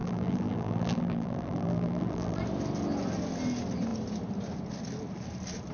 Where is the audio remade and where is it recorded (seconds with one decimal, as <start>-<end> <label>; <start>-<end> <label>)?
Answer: 0.0-2.4 remade; 2.4-5.7 recorded